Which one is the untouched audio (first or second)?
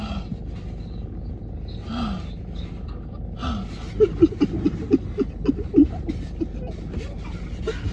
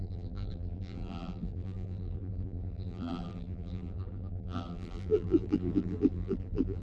first